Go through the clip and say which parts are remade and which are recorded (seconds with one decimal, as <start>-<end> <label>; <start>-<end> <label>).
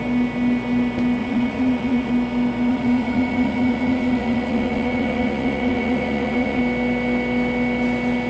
0.0-1.2 recorded; 1.2-2.1 remade; 2.1-2.7 recorded; 2.7-6.6 remade; 6.6-8.3 recorded